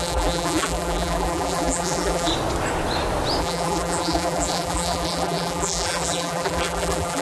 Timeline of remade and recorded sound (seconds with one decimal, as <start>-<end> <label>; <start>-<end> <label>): 0.0-2.3 remade; 2.3-3.4 recorded; 3.4-7.2 remade